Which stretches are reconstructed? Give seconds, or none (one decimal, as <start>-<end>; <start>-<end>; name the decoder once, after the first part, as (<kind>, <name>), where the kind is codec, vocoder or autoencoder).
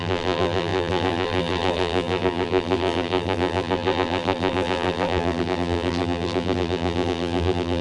0.0-7.8 (vocoder, BigVGAN v2)